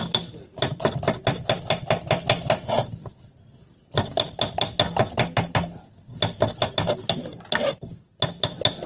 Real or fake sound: real